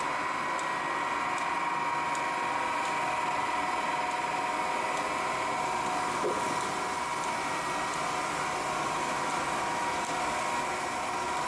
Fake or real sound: real